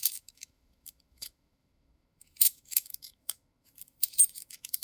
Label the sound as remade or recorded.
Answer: remade